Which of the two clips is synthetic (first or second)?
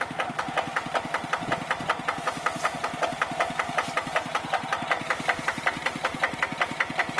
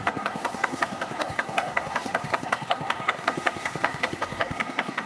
second